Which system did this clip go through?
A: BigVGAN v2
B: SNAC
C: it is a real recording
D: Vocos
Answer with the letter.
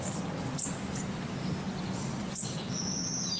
C